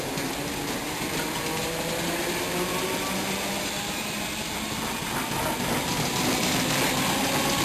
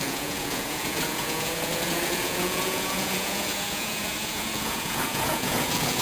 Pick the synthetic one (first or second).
second